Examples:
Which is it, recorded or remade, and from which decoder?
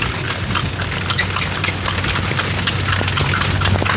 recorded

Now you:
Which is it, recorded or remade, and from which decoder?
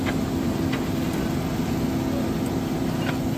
recorded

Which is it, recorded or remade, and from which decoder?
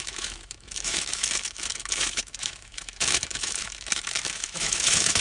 remade, autoencoder, DAC-VAE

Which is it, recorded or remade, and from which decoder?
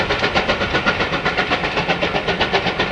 recorded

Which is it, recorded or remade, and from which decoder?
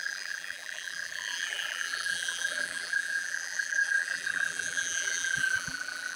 remade, vocoder, BigVGAN v2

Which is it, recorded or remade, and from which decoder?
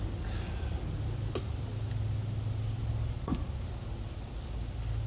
recorded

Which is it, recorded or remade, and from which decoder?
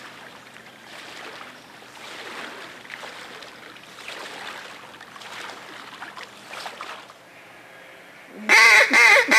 recorded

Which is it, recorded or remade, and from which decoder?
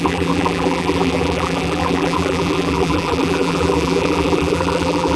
remade, vocoder, BigVGAN v2